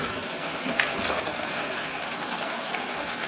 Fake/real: fake